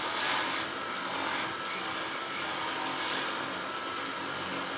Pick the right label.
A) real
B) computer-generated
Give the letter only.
A